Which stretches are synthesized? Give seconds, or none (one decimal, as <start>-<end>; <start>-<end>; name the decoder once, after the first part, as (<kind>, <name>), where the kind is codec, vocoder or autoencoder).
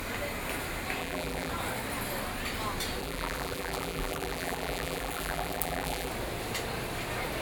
1.0-1.5 (vocoder, BigVGAN v2); 3.0-6.1